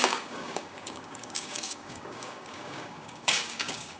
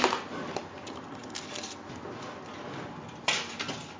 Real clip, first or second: second